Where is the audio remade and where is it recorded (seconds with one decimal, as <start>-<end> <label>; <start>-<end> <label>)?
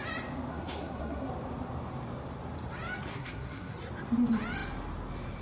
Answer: 0.0-0.5 recorded; 0.5-1.3 remade; 1.3-3.1 recorded; 3.1-3.9 remade; 3.9-5.4 recorded